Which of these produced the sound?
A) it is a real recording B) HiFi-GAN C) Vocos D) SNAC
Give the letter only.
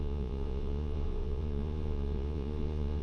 C